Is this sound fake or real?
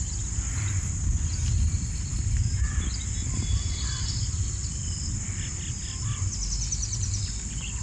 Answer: fake